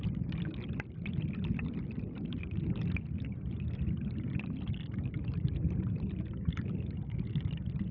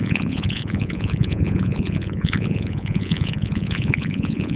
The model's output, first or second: second